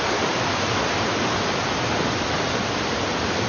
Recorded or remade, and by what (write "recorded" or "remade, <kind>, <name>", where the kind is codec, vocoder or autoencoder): recorded